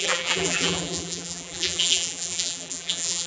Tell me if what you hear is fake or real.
fake